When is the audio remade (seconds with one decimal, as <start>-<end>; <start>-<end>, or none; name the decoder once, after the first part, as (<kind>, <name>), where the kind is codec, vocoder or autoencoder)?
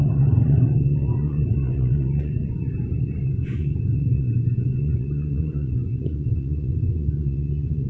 0.0-7.9 (vocoder, Vocos)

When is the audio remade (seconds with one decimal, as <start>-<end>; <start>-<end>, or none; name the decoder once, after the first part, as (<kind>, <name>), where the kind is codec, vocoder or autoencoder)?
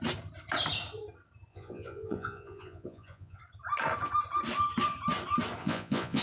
1.5-3.4 (vocoder, Vocos); 5.6-6.2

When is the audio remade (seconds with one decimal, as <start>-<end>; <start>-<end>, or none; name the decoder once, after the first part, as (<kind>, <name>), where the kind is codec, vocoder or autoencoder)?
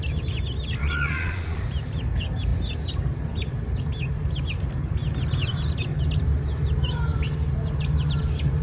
0.8-1.6 (vocoder, Vocos)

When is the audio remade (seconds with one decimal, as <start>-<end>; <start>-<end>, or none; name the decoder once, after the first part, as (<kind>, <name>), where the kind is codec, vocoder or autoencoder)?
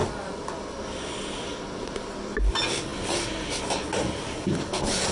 none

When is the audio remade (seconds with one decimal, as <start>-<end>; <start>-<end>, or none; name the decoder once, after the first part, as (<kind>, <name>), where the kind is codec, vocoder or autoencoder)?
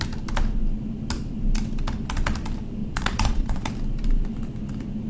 2.8-3.7 (vocoder, Vocos)